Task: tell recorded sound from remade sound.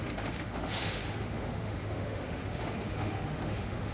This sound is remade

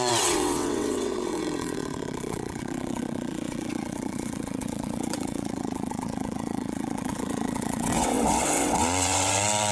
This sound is remade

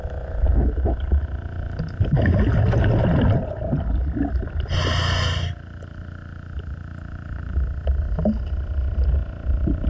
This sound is recorded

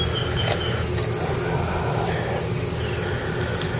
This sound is recorded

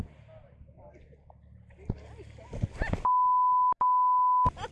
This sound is recorded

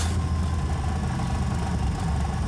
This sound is recorded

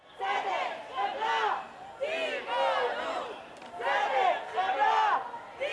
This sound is recorded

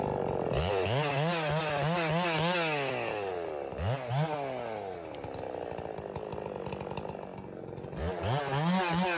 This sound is recorded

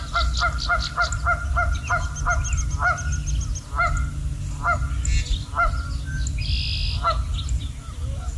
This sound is recorded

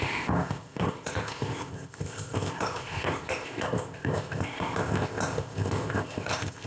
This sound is remade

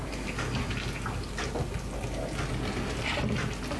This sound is recorded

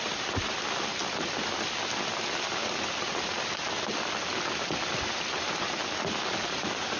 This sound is recorded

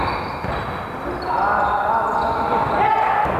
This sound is recorded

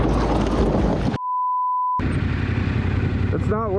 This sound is recorded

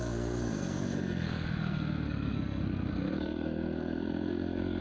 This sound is remade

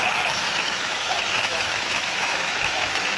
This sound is remade